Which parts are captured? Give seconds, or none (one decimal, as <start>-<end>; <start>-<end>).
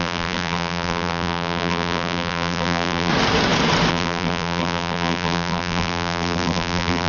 3.1-3.9